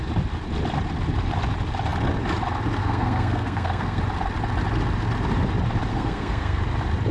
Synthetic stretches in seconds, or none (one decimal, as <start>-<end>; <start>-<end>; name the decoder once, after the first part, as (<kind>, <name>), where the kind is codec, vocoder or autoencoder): 2.8-4.0 (codec, SNAC); 5.9-6.6